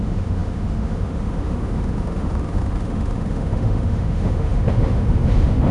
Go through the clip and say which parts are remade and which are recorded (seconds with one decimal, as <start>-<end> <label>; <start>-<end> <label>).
0.0-5.7 remade